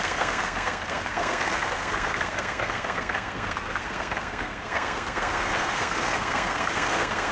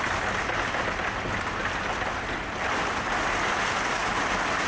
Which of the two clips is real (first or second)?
second